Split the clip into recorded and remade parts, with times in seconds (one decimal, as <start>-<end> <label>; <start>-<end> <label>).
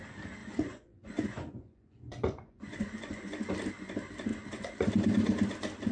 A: 0.0-0.4 recorded; 0.4-3.5 remade; 3.5-4.3 recorded; 4.3-4.9 remade; 4.9-5.9 recorded